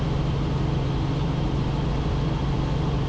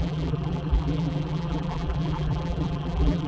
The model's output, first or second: second